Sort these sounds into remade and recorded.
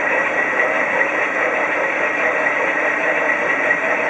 remade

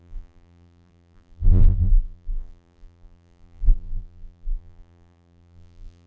remade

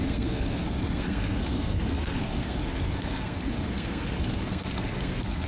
remade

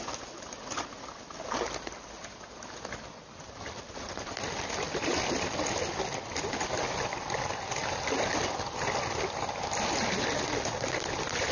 recorded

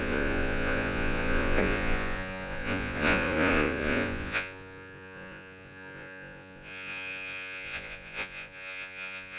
remade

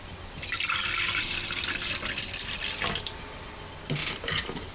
recorded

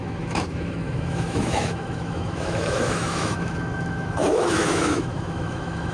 remade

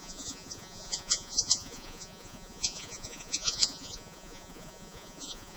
remade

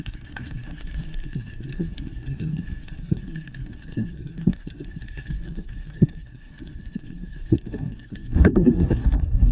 remade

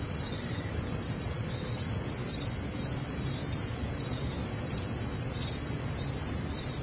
recorded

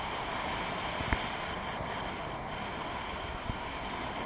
recorded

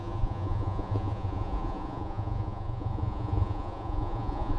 remade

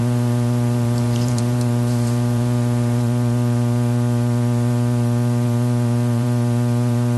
remade